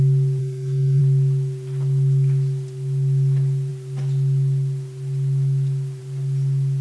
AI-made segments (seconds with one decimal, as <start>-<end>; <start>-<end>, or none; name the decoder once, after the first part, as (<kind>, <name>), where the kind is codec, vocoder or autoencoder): 0.4-1.0 (codec, SNAC)